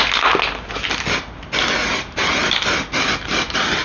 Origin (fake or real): real